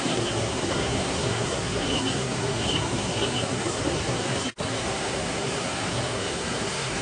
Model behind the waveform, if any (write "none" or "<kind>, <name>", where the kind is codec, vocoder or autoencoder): codec, SNAC